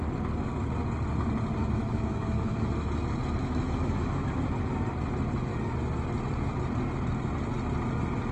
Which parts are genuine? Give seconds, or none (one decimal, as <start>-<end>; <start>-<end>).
0.0-1.6; 2.7-3.4; 4.3-8.3

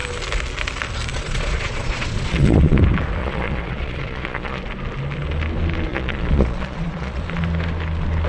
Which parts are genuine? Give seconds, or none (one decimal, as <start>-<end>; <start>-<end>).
0.0-1.1; 2.8-3.2; 4.6-5.9; 7.2-8.3

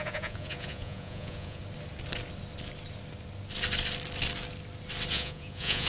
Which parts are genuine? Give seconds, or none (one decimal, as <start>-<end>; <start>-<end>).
1.6-5.1